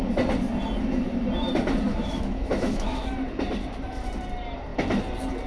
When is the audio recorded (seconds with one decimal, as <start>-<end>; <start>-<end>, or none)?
0.0-1.9; 3.1-5.5